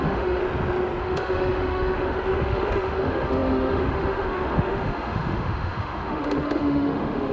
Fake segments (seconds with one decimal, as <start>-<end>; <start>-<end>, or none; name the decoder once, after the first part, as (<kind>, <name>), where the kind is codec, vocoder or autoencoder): 0.0-0.4 (autoencoder, DAC-VAE); 1.0-7.3